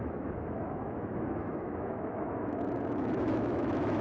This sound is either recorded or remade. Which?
remade